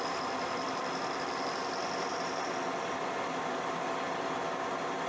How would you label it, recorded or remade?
recorded